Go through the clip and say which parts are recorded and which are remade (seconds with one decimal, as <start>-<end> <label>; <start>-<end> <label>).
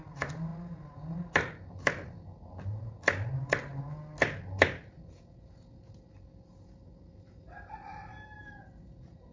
0.0-9.3 recorded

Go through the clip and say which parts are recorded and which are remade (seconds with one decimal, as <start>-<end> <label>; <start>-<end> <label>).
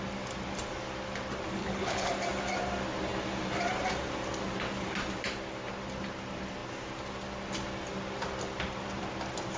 0.0-1.6 recorded; 1.6-2.1 remade; 2.1-9.6 recorded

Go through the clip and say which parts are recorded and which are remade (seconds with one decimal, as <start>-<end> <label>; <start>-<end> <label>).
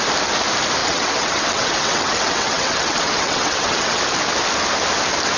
0.0-0.8 recorded; 0.8-4.0 remade; 4.0-5.4 recorded